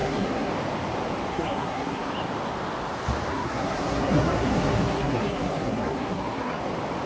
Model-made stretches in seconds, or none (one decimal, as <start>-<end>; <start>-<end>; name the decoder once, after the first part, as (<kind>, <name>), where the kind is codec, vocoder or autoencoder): 0.0-0.5 (codec, SNAC); 1.3-2.1; 3.3-6.6